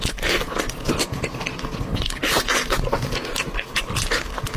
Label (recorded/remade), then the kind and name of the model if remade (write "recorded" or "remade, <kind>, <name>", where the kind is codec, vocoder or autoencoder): recorded